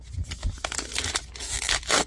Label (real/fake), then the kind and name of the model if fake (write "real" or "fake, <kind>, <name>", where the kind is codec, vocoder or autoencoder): real